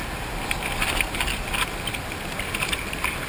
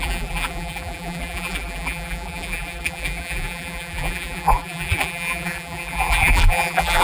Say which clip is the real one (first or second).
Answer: first